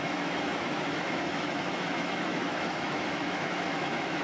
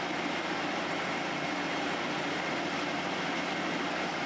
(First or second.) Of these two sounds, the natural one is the second